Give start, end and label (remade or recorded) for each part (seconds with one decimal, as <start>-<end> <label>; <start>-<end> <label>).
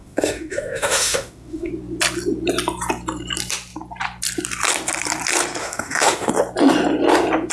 0.0-1.7 remade; 1.7-5.6 recorded; 5.6-6.3 remade; 6.3-7.5 recorded